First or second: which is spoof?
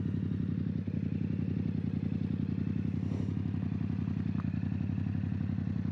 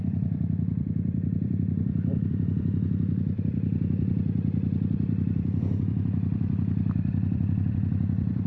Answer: second